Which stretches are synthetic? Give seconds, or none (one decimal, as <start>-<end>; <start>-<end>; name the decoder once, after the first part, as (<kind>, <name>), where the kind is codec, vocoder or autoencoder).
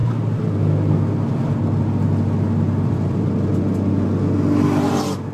none